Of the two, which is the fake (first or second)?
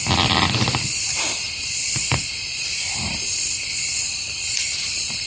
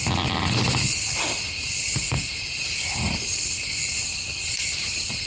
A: first